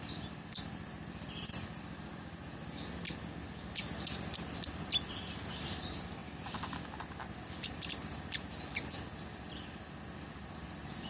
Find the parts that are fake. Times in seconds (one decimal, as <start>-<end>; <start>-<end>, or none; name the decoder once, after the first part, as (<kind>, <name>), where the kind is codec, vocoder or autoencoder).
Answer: none